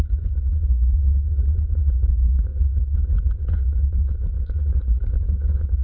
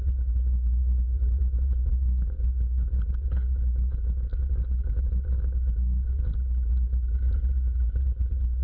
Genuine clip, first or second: second